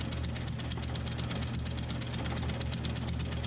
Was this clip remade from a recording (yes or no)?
no